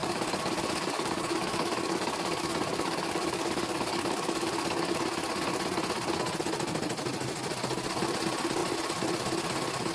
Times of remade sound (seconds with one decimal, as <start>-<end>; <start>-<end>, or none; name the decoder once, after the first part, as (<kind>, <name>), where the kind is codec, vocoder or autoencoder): 0.0-5.0 (codec, DAC)

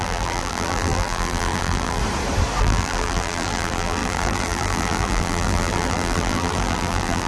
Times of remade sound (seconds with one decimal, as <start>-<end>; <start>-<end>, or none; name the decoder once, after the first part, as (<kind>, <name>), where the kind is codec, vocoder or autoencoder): 0.0-2.0 (vocoder, BigVGAN v2); 2.6-7.3

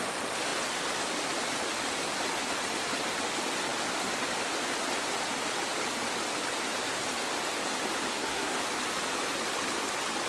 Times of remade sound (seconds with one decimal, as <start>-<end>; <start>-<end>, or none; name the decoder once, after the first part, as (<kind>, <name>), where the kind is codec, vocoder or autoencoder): 8.1-8.6 (codec, SNAC)

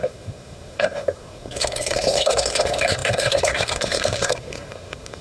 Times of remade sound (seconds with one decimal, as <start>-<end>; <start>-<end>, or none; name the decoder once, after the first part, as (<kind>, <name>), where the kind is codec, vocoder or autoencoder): 0.0-5.2 (codec, SNAC)

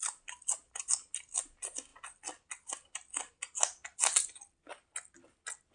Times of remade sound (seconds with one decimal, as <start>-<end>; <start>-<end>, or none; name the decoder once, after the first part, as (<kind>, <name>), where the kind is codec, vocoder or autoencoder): none

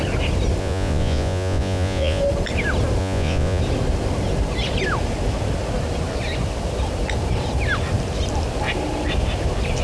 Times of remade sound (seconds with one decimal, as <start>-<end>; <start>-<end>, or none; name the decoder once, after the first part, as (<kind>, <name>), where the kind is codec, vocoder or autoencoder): 0.6-2.2 (vocoder, Vocos); 3.0-3.6